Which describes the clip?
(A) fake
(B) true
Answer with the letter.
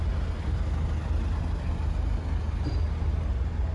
B